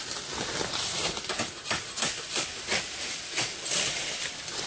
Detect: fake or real real